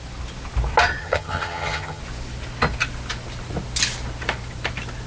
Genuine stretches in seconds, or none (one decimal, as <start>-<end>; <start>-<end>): 0.0-1.0; 2.0-5.1